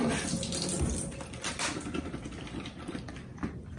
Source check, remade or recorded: recorded